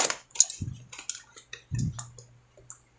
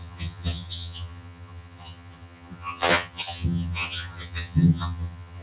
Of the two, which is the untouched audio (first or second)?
first